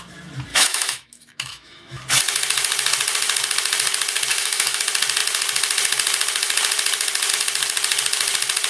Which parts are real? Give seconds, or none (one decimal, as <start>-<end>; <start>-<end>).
0.0-0.5; 2.0-4.3; 4.8-8.7